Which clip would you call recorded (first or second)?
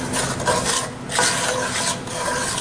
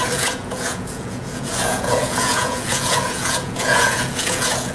first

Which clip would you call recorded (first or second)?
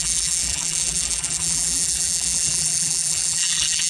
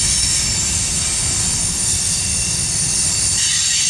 second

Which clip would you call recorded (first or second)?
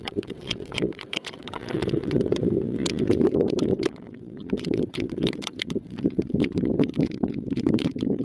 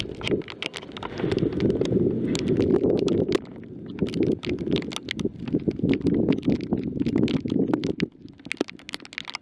second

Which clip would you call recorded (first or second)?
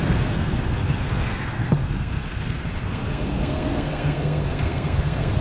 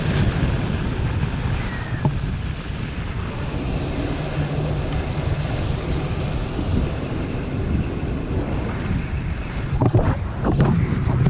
second